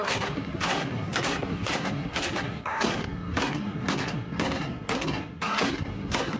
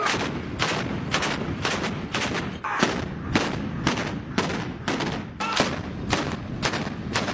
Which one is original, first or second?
second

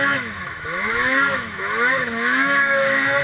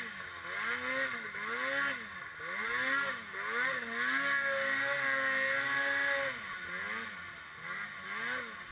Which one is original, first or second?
second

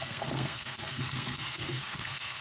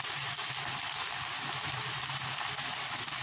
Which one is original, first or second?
second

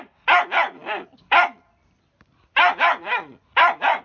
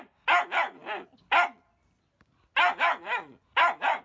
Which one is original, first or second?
second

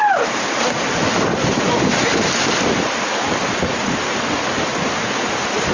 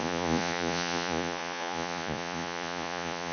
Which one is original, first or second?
first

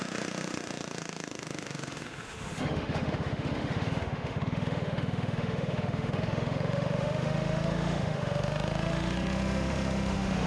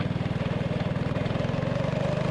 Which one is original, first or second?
second